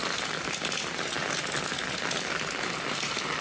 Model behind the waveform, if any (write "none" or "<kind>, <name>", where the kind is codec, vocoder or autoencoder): none